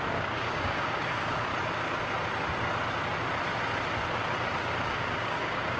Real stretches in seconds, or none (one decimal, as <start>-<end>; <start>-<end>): 1.5-4.9